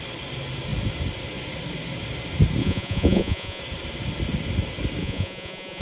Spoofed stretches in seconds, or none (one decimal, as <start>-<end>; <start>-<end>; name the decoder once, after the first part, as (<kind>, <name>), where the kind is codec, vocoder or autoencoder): 2.6-3.6 (vocoder, Vocos); 5.0-5.8